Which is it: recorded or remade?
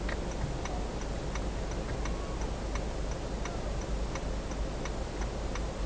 recorded